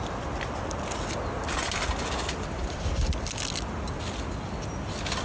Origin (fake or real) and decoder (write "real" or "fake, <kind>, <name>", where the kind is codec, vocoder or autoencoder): real